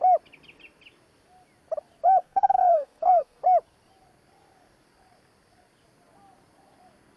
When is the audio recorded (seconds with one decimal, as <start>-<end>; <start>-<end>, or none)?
0.0-2.2; 3.4-7.2